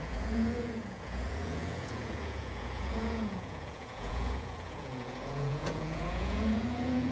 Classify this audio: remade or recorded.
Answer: remade